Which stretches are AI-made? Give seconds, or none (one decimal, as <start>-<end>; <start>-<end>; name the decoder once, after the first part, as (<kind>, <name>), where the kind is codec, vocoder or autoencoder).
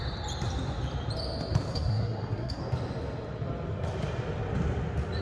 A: 1.7-2.6 (codec, SNAC)